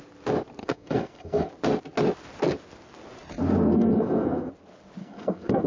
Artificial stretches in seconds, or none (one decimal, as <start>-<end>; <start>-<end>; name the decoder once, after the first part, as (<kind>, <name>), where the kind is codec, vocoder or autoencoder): 0.6-1.5 (codec, SNAC); 3.7-4.5; 5.0-5.7